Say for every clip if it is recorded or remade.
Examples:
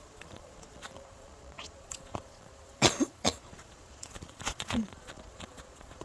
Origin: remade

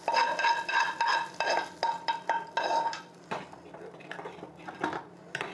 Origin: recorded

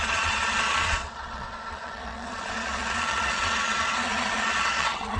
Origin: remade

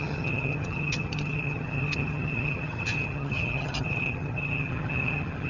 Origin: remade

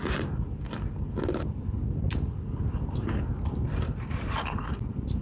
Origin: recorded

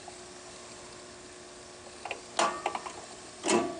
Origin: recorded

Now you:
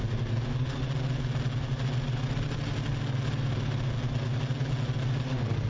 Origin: recorded